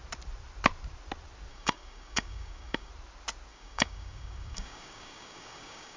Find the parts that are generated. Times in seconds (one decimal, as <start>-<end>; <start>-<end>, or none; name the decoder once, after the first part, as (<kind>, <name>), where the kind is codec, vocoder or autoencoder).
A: 1.5-2.9 (codec, DAC); 3.5-6.0